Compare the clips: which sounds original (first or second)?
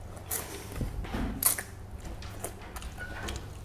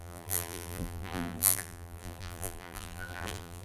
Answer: first